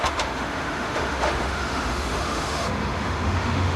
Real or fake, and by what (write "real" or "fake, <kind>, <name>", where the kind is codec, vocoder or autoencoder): fake, autoencoder, DAC-VAE